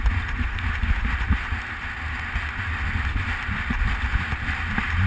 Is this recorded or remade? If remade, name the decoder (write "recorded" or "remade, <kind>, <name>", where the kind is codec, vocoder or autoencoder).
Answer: recorded